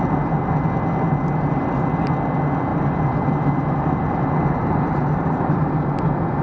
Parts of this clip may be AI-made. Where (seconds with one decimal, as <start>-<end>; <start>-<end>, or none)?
2.7-5.7

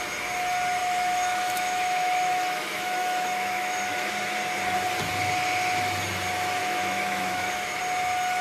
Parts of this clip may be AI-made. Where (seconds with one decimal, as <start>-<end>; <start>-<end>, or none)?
0.8-4.1; 6.6-7.8

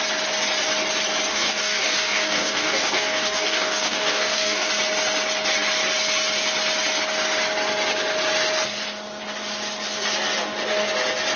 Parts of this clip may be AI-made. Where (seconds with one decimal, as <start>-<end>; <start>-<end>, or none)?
1.3-4.7

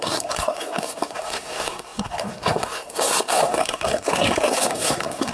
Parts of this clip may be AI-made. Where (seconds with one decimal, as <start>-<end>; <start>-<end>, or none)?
0.0-5.3

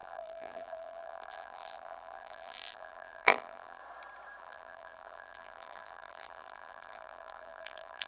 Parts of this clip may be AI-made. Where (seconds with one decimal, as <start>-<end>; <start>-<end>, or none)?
0.0-3.8; 4.4-8.1

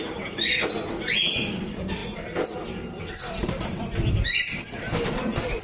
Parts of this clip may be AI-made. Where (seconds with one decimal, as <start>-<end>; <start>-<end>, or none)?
none

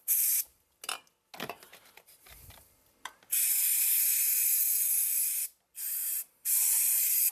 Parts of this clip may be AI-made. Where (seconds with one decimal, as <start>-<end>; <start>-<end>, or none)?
0.0-0.5; 4.9-7.3

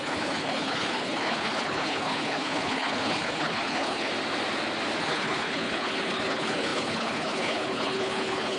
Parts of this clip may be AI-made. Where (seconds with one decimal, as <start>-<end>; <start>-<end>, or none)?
0.0-4.1; 5.0-8.6